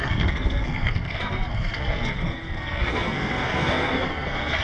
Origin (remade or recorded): remade